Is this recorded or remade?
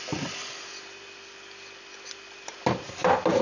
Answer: recorded